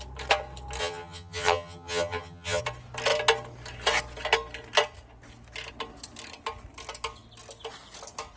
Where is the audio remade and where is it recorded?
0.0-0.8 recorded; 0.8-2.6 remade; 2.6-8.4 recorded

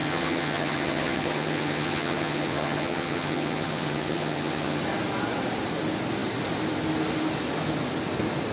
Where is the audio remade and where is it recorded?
0.0-4.8 remade; 4.8-8.5 recorded

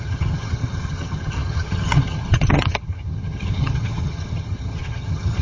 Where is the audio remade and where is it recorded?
0.0-5.4 remade